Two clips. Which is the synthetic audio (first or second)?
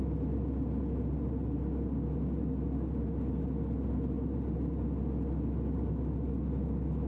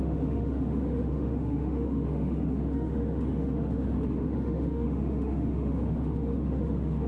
second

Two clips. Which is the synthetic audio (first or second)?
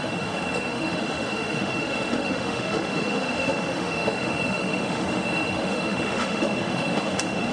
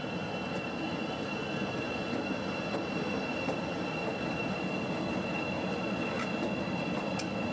first